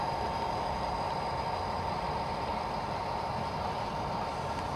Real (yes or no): yes